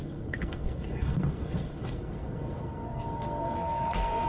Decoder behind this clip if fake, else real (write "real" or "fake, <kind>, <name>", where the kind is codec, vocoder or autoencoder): fake, codec, SNAC